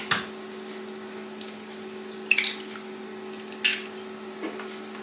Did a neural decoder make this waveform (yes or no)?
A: no